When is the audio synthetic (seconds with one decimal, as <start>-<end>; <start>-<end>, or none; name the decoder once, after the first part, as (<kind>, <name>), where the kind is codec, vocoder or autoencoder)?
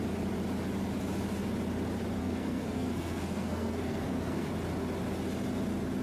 2.2-4.5 (codec, SNAC)